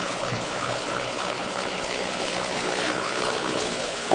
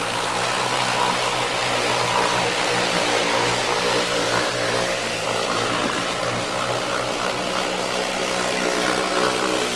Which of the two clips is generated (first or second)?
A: first